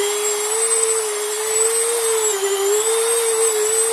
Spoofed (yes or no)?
no